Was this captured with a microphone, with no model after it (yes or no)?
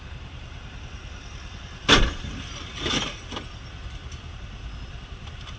yes